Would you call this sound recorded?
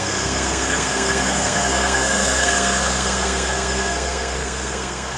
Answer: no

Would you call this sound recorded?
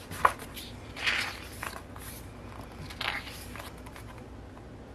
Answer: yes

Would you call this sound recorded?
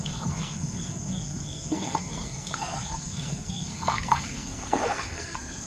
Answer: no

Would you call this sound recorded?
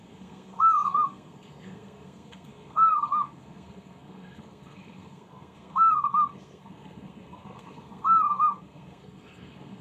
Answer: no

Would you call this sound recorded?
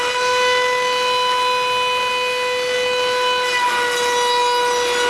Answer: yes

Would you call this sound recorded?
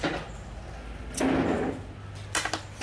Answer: yes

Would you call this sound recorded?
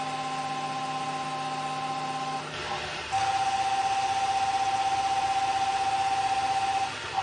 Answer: yes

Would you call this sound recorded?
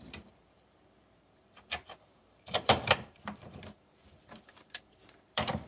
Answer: no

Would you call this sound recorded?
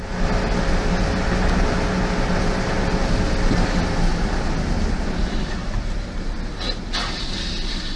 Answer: yes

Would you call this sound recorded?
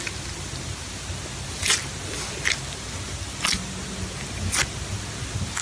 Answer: yes